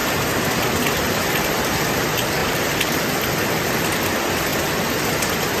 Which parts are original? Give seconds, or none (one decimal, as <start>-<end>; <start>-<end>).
0.0-2.4; 3.0-5.6